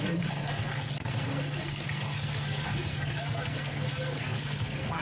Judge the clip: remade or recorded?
remade